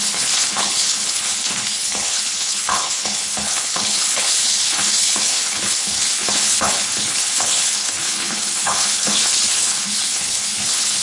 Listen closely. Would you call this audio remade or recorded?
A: remade